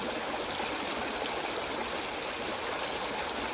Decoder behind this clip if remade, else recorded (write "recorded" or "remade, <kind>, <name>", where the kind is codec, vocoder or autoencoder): recorded